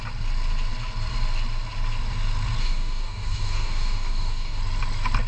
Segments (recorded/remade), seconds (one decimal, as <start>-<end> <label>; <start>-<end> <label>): 0.0-2.6 recorded; 2.6-4.6 remade; 4.6-5.3 recorded